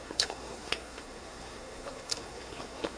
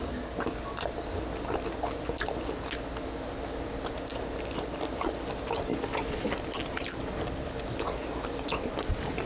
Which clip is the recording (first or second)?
second